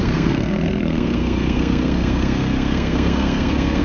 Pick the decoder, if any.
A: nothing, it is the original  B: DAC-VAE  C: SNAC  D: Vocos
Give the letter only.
C